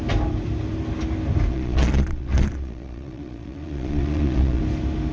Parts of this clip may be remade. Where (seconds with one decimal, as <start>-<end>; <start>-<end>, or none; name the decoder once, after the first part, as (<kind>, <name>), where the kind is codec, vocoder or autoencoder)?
1.5-4.6 (vocoder, Vocos)